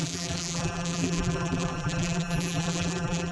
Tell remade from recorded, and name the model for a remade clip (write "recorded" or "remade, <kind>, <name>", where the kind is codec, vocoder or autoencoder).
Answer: remade, vocoder, BigVGAN v2